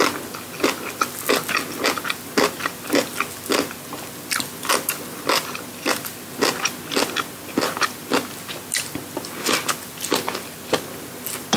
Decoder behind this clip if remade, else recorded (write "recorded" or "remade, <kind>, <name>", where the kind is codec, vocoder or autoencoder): recorded